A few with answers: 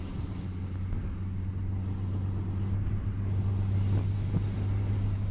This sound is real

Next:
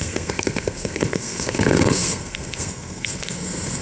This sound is fake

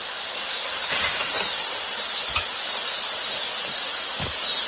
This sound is real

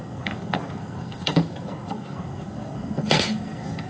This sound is fake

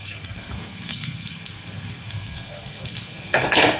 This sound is fake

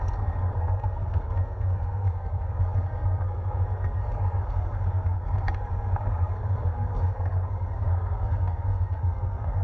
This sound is fake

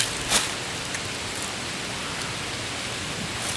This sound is real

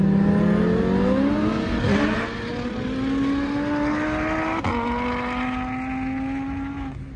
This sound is real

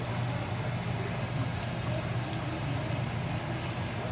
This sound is real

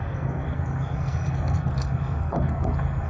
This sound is fake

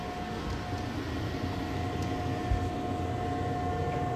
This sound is real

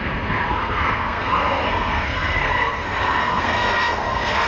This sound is fake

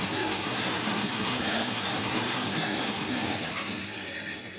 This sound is fake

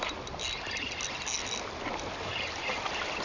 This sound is real